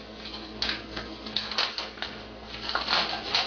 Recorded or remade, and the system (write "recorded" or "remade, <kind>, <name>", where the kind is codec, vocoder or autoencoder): remade, codec, SNAC